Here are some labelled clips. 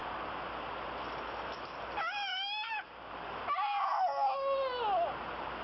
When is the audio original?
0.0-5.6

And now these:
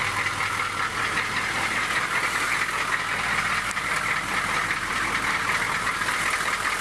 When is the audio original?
0.0-4.3

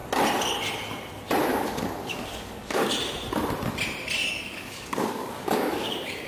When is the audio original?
0.0-1.5; 2.9-4.2

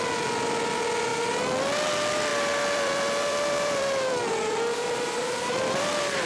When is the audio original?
0.0-2.3

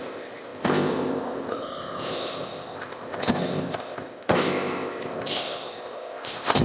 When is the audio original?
none

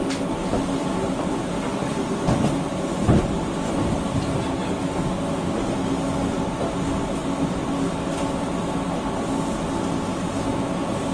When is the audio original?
0.0-0.8; 2.5-11.1